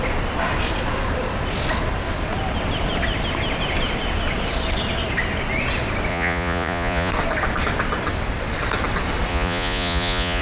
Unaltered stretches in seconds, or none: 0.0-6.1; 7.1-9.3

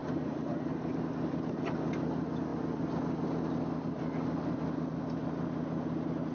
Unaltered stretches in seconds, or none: 0.7-6.3

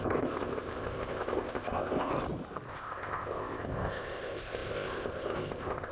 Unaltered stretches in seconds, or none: 2.1-2.7

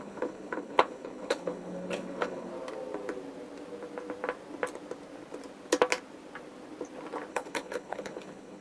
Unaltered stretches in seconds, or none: 2.5-7.3

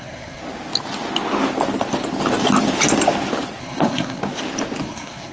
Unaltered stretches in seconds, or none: 0.4-3.6; 4.2-4.8